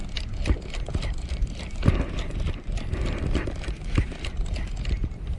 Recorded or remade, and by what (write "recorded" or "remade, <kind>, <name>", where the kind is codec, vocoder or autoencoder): recorded